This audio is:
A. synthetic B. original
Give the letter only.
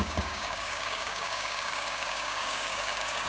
A